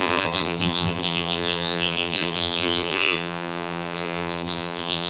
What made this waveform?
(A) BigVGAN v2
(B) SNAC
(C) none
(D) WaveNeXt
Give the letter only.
A